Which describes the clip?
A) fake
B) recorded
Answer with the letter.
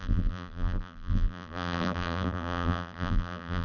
A